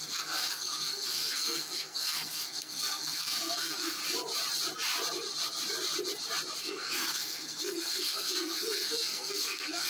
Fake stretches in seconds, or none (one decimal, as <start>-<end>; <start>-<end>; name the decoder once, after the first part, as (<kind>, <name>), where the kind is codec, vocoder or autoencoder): 0.0-4.0 (codec, SNAC); 6.6-9.9